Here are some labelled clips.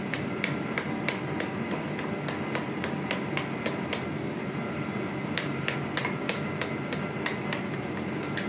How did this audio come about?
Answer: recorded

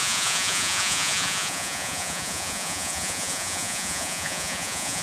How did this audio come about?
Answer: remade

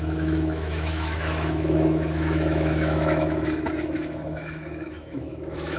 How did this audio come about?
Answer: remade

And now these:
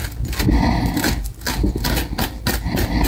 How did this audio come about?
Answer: recorded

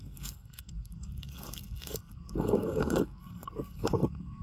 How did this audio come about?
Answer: remade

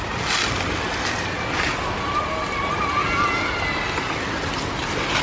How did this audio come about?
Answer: recorded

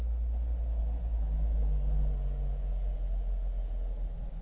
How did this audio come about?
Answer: recorded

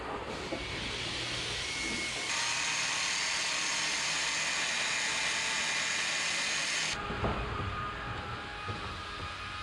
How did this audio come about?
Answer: recorded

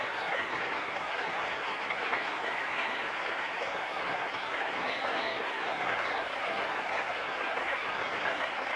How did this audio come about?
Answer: remade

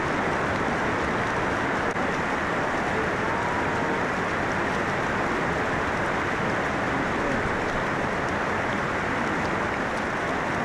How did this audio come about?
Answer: recorded